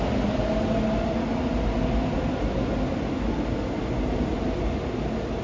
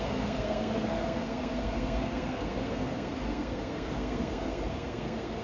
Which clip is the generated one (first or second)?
second